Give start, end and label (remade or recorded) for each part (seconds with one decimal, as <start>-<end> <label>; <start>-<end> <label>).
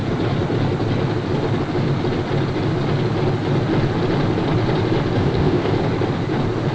0.0-5.2 recorded; 5.2-5.7 remade; 5.7-6.7 recorded